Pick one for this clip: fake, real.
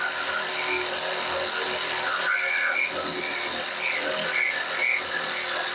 real